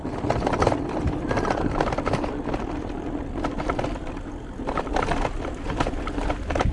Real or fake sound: real